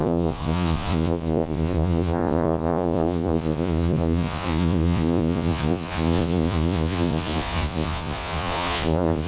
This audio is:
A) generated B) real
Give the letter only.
A